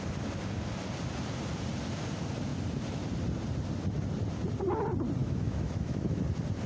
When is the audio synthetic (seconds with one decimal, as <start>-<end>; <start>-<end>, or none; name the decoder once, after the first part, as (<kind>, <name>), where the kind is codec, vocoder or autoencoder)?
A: 5.2-6.2 (autoencoder, DAC-VAE)